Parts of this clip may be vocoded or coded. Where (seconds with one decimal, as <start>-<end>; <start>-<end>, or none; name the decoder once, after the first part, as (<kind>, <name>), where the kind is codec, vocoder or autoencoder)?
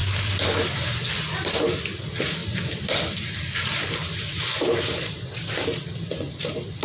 0.0-1.8 (vocoder, BigVGAN v2); 2.4-5.8